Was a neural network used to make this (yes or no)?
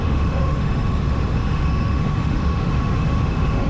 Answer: yes